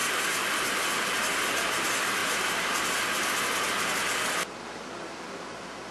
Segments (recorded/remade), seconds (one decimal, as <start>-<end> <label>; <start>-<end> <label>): 0.0-5.9 recorded